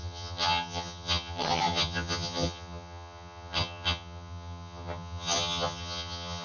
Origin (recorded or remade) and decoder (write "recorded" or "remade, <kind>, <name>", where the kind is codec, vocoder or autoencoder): remade, vocoder, HiFi-GAN